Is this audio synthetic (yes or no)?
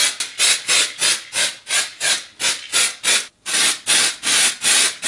no